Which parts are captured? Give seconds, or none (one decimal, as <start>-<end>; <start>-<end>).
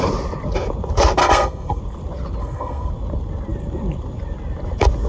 0.0-1.2; 1.8-2.4; 2.9-5.1